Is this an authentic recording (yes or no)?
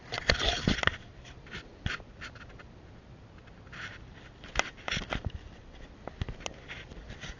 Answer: yes